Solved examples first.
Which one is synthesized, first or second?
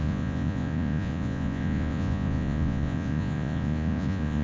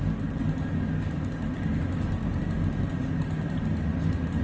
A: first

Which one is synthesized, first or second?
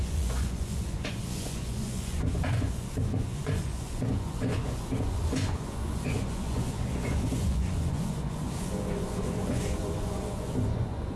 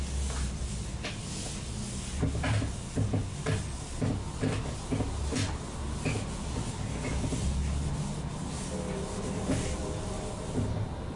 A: first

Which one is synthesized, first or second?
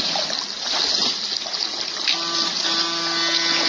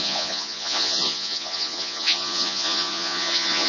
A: second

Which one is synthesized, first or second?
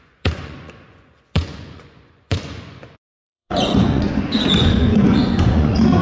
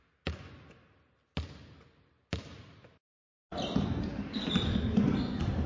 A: first